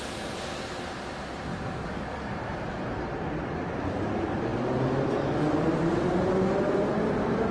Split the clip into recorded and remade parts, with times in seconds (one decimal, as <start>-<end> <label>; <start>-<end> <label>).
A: 0.0-1.5 recorded; 1.5-2.3 remade; 2.3-7.5 recorded